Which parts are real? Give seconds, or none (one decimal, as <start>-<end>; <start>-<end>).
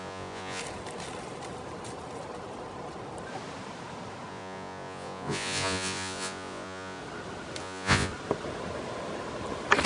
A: 0.6-4.3; 7.0-7.6; 8.1-9.9